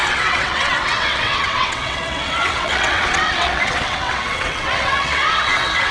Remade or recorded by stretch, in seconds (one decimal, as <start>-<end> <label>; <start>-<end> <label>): 0.0-5.9 remade